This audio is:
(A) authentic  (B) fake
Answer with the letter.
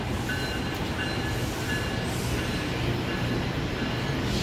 A